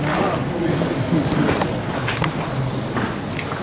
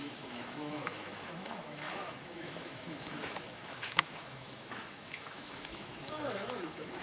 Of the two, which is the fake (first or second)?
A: second